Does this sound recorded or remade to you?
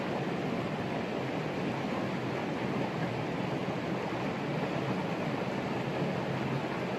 recorded